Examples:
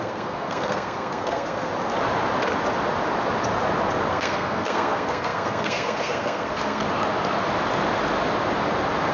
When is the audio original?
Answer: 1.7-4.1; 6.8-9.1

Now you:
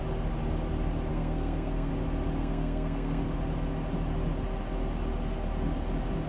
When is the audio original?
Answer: 0.0-1.1; 1.9-2.4; 3.2-6.3

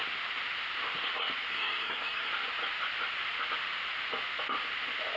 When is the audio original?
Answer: 0.0-1.5; 2.3-5.2

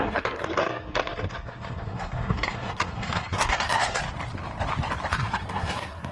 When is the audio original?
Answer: 4.0-5.1